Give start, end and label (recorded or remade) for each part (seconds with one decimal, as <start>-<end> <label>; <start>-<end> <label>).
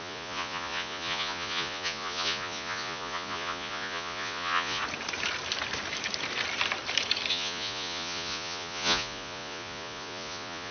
0.0-4.8 remade; 4.8-7.3 recorded; 7.3-10.7 remade